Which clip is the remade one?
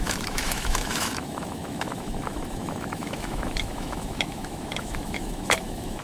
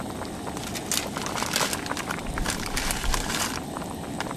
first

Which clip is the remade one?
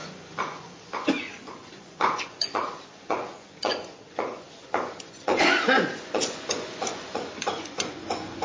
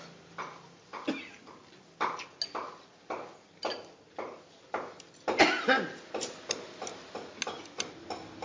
first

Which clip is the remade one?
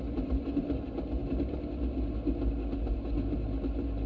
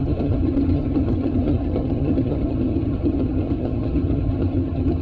second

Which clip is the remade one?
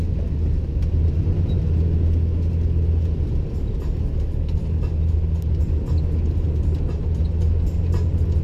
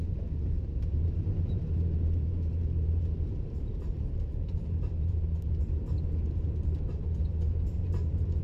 second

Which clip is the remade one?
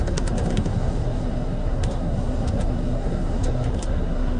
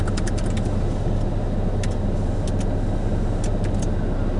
first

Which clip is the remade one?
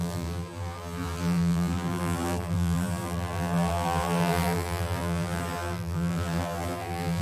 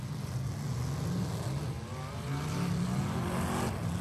first